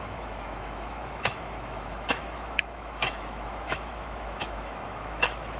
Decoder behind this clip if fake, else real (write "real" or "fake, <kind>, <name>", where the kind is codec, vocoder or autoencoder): fake, autoencoder, DAC-VAE